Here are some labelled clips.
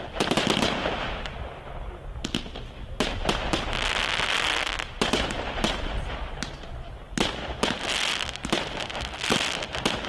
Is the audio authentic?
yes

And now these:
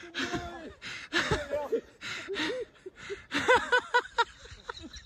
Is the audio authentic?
yes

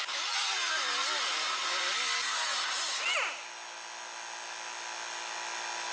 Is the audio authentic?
yes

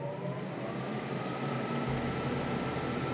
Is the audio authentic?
yes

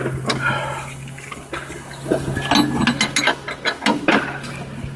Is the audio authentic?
yes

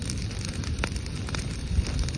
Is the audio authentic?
no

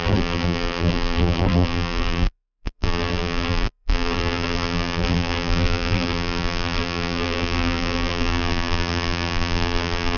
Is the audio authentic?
no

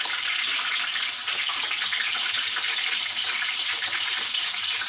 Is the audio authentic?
yes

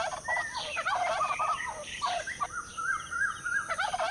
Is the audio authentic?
yes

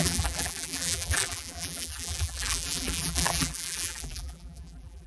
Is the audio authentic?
no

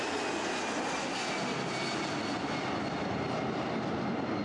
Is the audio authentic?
yes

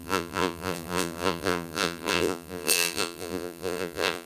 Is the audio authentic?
no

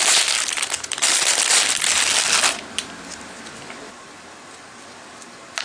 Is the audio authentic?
no